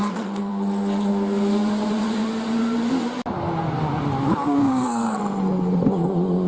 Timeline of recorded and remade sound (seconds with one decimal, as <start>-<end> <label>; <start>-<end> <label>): 0.0-0.5 remade; 0.5-4.6 recorded; 4.6-5.2 remade; 5.2-6.5 recorded

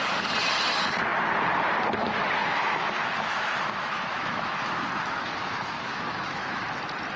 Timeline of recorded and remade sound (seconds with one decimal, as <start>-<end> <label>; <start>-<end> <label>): 0.0-2.4 recorded; 2.4-6.6 remade; 6.6-7.2 recorded

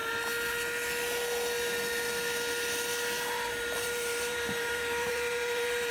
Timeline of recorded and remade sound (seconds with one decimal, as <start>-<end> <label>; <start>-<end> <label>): 0.0-3.5 recorded; 3.5-5.9 remade

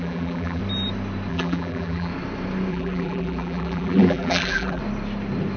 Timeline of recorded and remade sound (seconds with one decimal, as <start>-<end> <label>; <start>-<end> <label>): 0.0-0.6 remade; 0.6-1.3 recorded; 1.3-2.1 remade; 2.1-2.7 recorded; 2.7-4.8 remade; 4.8-5.6 recorded

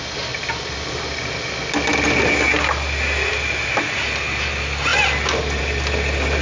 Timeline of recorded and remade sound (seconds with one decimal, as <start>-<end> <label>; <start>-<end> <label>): 0.0-6.4 recorded